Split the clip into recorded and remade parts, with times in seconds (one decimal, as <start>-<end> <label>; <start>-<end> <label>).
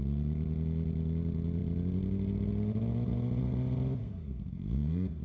0.0-4.0 recorded; 4.0-5.2 remade